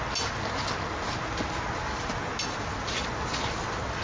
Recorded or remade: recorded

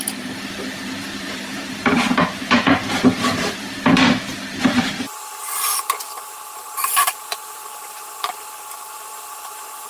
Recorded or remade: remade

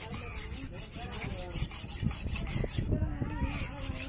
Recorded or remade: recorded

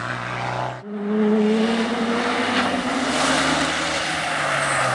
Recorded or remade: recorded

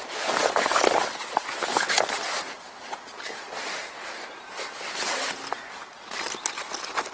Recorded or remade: recorded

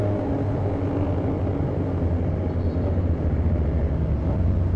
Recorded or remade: recorded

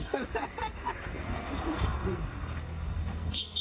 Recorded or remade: remade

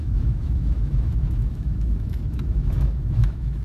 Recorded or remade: remade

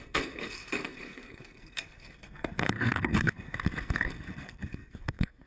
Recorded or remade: remade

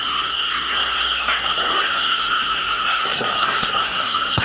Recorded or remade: remade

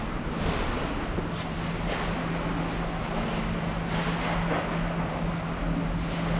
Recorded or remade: recorded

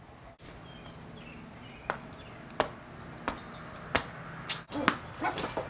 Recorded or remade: recorded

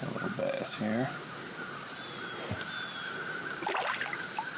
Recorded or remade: recorded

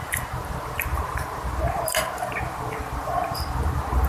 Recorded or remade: recorded